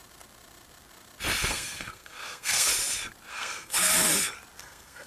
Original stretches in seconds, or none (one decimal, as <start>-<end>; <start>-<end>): 0.0-1.5; 2.7-3.3; 3.9-4.6

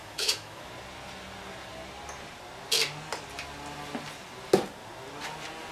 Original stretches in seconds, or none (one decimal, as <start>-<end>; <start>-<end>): 0.7-5.7

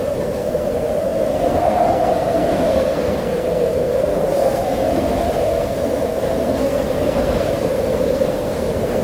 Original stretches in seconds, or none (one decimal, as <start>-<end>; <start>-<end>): none